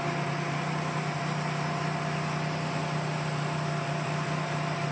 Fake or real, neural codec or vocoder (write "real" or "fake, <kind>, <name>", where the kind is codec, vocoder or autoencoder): real